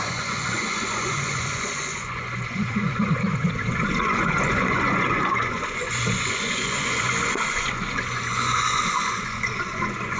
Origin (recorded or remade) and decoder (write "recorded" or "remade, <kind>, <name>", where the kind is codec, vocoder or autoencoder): remade, vocoder, Vocos